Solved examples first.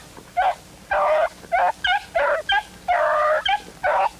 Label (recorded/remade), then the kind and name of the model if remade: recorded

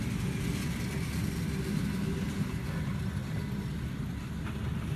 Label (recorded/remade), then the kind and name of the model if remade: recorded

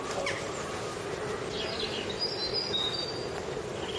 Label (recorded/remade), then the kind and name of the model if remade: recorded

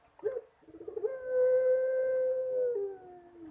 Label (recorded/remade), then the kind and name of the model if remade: recorded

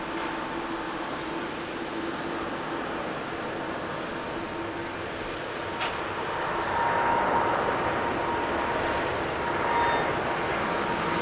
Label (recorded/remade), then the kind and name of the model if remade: recorded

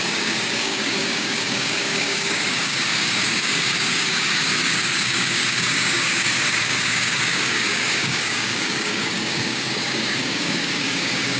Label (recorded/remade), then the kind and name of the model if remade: remade, codec, DAC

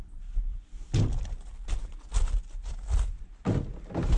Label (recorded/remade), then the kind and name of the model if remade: recorded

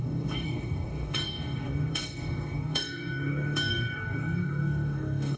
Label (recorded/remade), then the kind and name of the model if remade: remade, codec, DAC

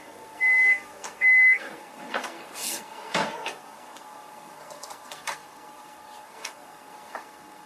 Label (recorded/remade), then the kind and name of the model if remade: remade, codec, SNAC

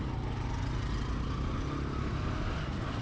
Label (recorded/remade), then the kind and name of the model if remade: recorded